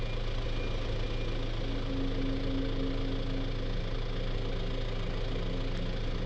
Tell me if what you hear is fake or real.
real